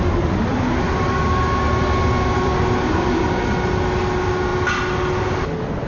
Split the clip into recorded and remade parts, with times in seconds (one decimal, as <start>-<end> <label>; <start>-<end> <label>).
0.0-5.9 recorded